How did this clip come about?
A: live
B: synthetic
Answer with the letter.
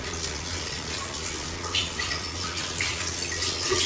B